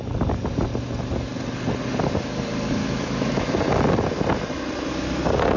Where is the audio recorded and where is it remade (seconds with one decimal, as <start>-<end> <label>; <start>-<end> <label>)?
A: 0.0-2.8 recorded; 2.8-3.6 remade; 3.6-5.6 recorded